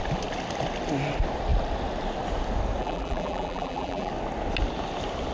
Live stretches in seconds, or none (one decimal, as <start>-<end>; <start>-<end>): 0.0-2.8; 4.1-5.3